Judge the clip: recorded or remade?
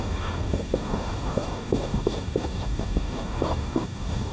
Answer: remade